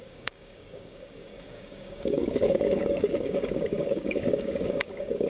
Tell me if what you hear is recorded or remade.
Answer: remade